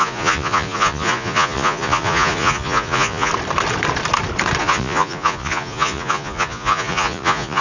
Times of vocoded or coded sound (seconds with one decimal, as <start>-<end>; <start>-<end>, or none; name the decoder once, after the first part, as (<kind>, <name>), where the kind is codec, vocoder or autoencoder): 0.0-3.3 (vocoder, Vocos); 4.6-7.6